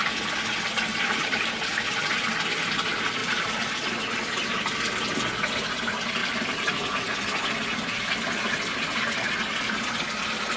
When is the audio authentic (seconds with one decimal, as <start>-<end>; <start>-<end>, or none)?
0.0-0.9; 1.5-3.2; 3.7-6.2; 7.0-10.6